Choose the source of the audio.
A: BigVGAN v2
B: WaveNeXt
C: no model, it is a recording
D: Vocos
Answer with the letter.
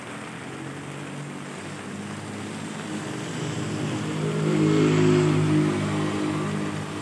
C